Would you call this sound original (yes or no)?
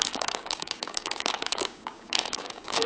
no